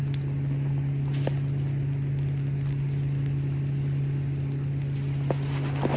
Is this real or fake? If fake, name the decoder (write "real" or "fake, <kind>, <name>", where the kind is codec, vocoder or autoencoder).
real